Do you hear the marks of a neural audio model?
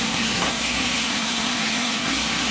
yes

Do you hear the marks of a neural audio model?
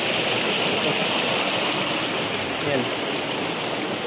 no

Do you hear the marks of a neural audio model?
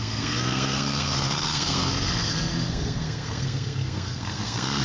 yes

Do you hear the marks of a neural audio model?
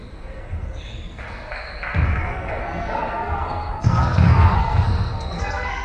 yes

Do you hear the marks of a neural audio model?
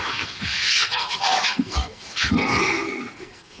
yes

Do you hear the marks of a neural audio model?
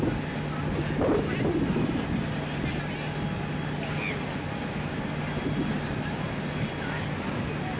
no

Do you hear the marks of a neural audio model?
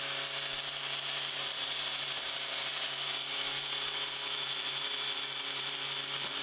no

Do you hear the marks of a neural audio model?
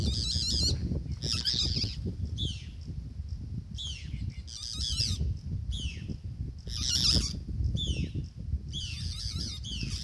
no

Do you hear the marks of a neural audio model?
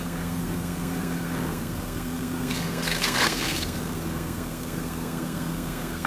yes